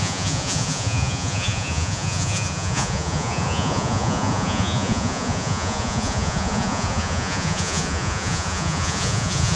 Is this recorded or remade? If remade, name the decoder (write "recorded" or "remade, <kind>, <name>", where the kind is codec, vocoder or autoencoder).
remade, vocoder, Vocos